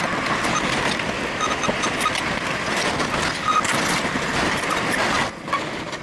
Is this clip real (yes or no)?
yes